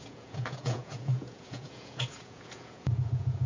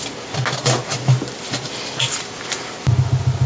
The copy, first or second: first